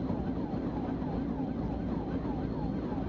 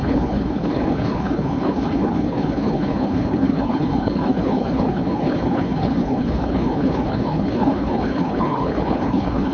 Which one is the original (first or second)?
first